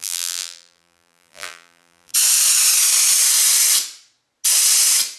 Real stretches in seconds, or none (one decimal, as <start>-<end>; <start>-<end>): 2.1-5.2